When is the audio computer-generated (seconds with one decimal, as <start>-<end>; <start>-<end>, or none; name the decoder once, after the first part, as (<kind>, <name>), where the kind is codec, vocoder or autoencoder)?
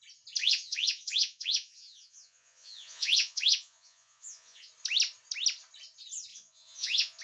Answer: 0.4-4.7 (vocoder, Vocos); 6.3-7.2